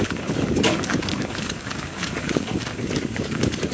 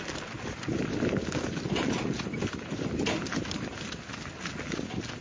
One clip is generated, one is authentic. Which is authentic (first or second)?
second